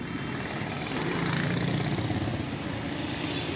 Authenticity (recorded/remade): recorded